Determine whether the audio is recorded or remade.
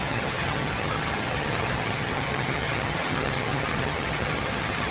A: remade